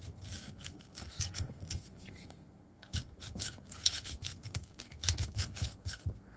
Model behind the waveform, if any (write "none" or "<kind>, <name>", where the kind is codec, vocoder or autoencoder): codec, SNAC